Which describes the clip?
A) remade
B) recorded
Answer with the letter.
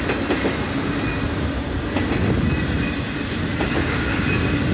B